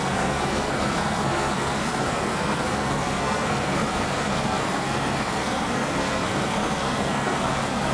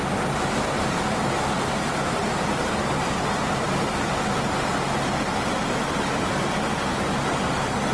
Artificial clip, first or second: first